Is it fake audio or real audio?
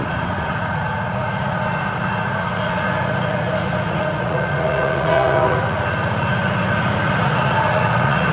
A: fake